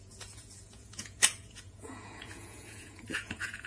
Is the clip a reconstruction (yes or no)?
yes